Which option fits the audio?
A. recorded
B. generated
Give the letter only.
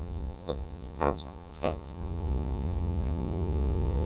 B